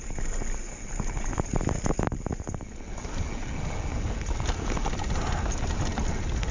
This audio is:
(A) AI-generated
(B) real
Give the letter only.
B